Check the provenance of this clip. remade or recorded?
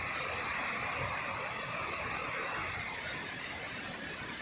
recorded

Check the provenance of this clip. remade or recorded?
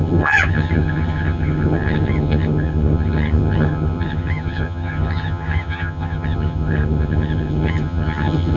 remade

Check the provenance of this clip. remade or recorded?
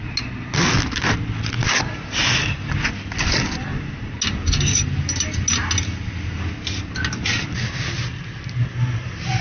recorded